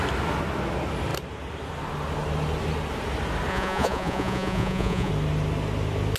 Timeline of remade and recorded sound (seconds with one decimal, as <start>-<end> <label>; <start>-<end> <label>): 0.0-3.5 recorded; 3.5-5.1 remade; 5.1-6.2 recorded